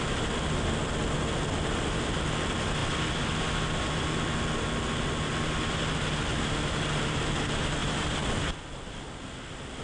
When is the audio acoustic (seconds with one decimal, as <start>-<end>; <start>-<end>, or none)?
0.0-7.8; 8.6-9.8

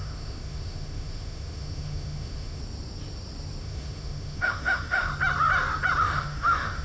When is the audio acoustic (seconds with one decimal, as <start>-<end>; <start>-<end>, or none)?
2.6-3.6; 5.1-6.0

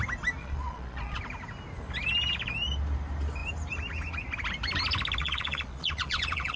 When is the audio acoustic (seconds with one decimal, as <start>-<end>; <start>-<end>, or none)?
0.0-0.4; 1.2-5.2

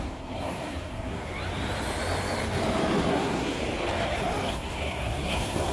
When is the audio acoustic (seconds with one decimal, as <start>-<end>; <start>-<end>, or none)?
1.3-3.1; 3.6-4.5

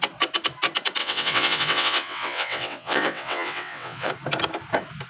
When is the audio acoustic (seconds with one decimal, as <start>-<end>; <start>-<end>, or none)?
0.0-1.0; 4.1-5.1

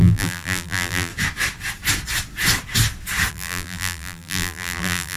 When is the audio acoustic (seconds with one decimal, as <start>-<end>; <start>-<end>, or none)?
1.1-3.3

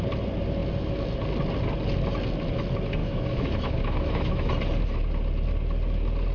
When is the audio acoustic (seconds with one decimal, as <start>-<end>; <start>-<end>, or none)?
0.0-3.0; 4.5-6.3

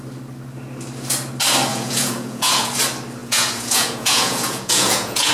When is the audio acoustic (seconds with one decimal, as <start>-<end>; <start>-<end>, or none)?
0.0-1.7; 2.7-3.2